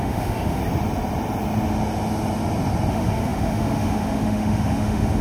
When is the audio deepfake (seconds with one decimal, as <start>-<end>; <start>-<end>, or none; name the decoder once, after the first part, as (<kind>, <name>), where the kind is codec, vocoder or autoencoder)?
0.0-0.6 (autoencoder, DAC-VAE); 2.9-5.2